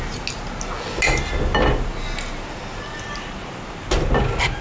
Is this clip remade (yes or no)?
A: no